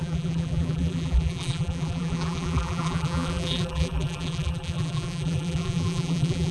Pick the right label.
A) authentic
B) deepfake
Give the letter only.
B